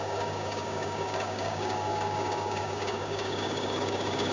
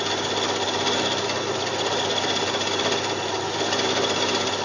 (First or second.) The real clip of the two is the second